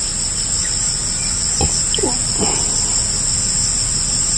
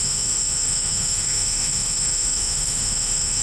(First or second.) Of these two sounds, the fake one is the second